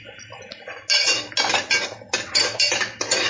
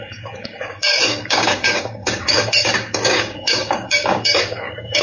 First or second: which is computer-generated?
second